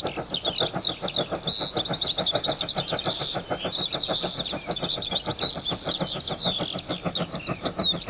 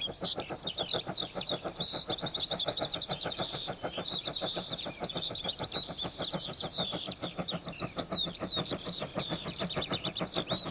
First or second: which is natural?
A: first